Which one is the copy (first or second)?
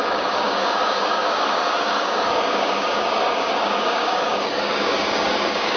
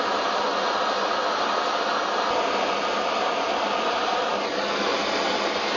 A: first